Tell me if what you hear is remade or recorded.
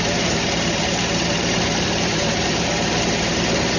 remade